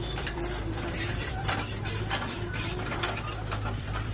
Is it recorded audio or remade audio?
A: remade